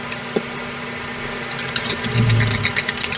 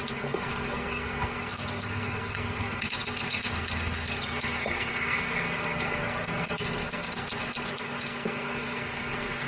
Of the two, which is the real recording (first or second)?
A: first